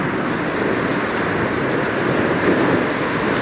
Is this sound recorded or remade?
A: recorded